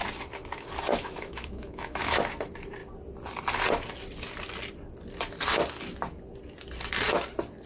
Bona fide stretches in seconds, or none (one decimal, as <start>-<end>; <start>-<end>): 0.0-0.9; 2.2-7.7